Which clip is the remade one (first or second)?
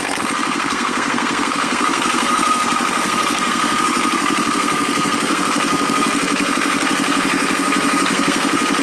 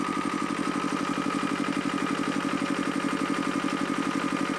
first